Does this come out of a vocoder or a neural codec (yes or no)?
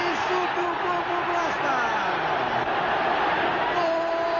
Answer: no